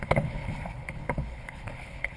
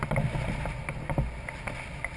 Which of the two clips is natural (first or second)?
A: second